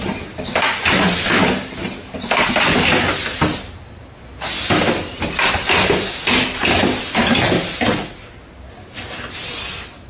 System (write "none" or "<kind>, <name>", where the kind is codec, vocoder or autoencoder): none